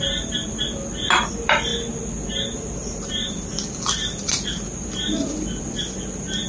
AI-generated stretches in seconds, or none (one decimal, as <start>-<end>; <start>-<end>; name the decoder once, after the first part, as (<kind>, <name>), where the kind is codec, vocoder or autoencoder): none